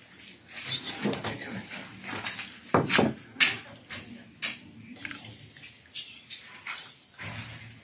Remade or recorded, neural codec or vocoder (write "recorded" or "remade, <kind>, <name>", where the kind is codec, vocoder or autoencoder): recorded